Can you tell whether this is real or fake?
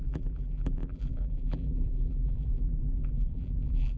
fake